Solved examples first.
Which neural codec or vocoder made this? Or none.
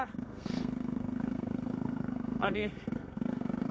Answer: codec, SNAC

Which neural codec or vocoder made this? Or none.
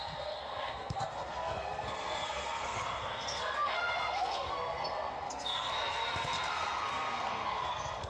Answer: codec, SNAC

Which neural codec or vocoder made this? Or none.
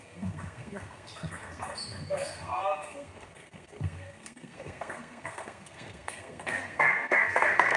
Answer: codec, SNAC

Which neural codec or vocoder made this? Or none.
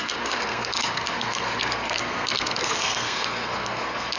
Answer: codec, SNAC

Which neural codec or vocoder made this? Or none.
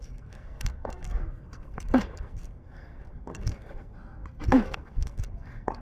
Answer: codec, SNAC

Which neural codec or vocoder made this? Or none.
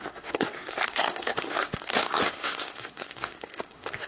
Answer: codec, SNAC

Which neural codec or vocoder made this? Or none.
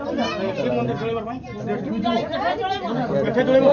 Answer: none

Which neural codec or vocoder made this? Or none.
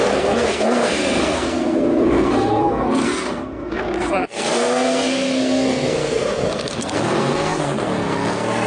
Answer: codec, SNAC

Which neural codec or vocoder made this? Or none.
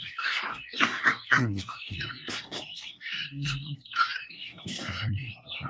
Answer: codec, SNAC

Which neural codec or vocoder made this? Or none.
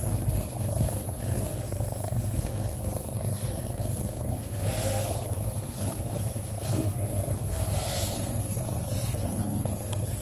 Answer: codec, SNAC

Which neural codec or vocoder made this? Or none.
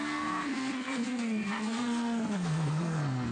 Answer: codec, SNAC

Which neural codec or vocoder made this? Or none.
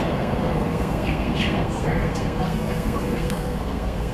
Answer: codec, SNAC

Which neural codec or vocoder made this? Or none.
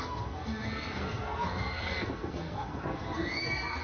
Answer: codec, SNAC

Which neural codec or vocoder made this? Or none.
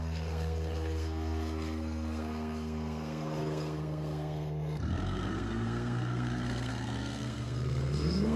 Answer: codec, SNAC